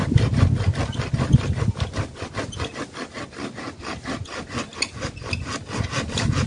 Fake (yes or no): no